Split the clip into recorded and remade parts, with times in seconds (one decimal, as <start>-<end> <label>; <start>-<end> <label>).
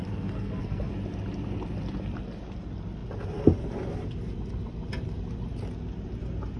0.0-0.9 remade; 0.9-6.6 recorded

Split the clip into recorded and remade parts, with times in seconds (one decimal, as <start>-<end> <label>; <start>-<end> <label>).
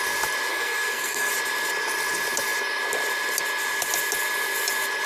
0.0-0.5 recorded; 0.5-1.3 remade; 1.3-5.1 recorded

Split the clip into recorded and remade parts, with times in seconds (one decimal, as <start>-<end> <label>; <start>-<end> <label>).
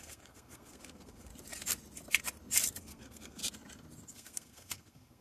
0.0-1.3 remade; 1.3-2.8 recorded; 2.8-3.4 remade; 3.4-4.1 recorded; 4.1-5.2 remade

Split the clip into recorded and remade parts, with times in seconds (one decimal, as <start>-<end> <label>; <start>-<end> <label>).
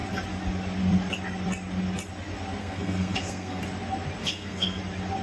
0.0-2.6 recorded; 2.6-3.6 remade; 3.6-4.2 recorded; 4.2-4.8 remade; 4.8-5.2 recorded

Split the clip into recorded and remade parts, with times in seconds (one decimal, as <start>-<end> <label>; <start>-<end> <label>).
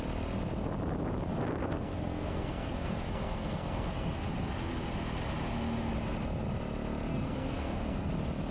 0.0-1.6 recorded; 1.6-4.2 remade; 4.2-7.1 recorded; 7.1-8.1 remade; 8.1-8.5 recorded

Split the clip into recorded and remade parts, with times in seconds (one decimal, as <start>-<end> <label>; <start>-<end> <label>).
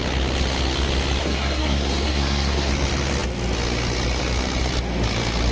0.0-1.2 recorded; 1.2-2.7 remade; 2.7-5.5 recorded